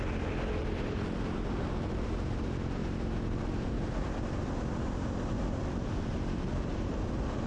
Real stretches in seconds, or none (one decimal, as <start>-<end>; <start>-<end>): 0.0-0.6; 2.4-2.8